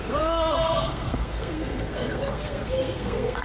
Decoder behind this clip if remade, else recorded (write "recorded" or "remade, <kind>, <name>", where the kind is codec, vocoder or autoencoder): remade, codec, SNAC